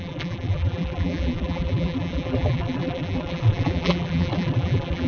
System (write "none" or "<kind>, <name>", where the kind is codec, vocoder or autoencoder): vocoder, BigVGAN v2